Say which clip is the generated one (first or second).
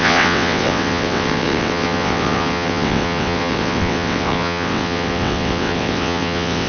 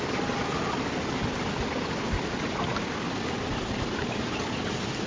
first